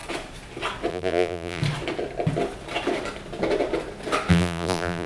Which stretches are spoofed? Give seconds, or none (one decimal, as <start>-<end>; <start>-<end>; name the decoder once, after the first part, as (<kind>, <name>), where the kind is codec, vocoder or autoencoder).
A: 0.9-1.6 (vocoder, BigVGAN v2); 4.3-5.1